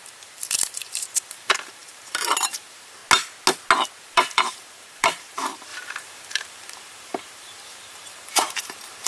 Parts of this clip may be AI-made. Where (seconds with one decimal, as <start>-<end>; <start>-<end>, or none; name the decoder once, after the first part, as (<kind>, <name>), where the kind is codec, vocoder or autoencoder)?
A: 0.0-3.0 (vocoder, BigVGAN v2); 4.0-9.1